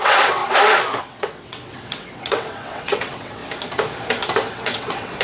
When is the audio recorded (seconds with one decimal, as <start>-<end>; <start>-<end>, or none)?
0.4-1.0; 3.4-4.5